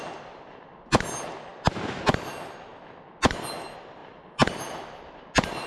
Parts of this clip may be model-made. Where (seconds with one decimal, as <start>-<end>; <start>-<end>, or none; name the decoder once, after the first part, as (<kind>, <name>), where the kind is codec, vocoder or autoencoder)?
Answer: 4.0-5.2 (vocoder, BigVGAN v2)